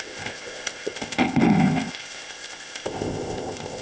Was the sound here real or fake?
fake